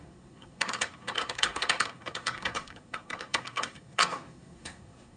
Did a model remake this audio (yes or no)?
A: yes